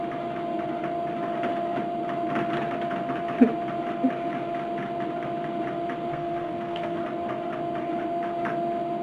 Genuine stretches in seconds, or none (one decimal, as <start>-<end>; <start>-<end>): 0.0-6.1; 7.0-9.0